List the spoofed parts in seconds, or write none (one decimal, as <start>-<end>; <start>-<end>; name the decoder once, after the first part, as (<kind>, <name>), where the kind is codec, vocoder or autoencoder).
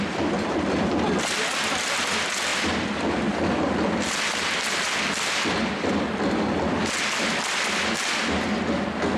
none